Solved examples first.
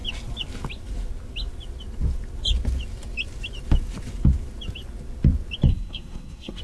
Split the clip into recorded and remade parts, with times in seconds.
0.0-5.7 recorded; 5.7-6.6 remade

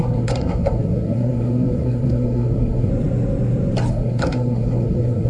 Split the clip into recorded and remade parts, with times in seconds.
0.0-2.9 remade; 2.9-3.9 recorded; 3.9-5.3 remade

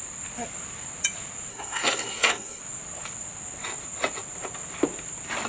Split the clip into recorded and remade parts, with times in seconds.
0.0-1.5 recorded; 1.5-2.6 remade; 2.6-5.5 recorded

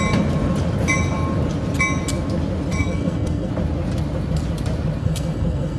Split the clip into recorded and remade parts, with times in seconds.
0.0-2.8 recorded; 2.8-3.5 remade; 3.5-5.0 recorded; 5.0-5.8 remade

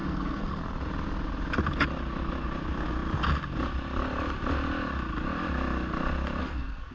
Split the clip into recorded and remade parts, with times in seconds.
0.0-0.6 remade; 0.6-6.4 recorded; 6.4-6.9 remade

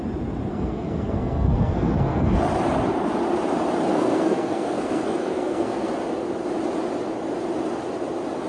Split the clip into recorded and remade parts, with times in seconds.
0.0-0.5 recorded; 0.5-2.4 remade; 2.4-3.9 recorded; 3.9-5.9 remade; 5.9-8.5 recorded

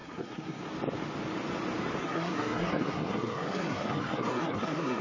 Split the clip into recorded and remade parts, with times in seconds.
0.0-0.6 remade; 0.6-2.0 recorded; 2.0-5.0 remade

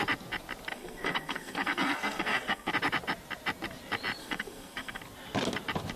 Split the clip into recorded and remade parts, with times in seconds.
0.0-0.7 recorded; 0.7-2.7 remade; 2.7-4.2 recorded; 4.2-5.0 remade; 5.0-6.0 recorded